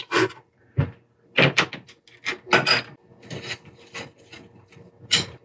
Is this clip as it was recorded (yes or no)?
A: yes